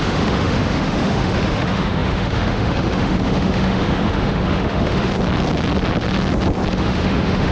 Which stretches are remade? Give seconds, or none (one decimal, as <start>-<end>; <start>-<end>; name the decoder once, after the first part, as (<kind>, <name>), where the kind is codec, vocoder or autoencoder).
0.0-5.1 (autoencoder, DAC-VAE); 6.7-7.5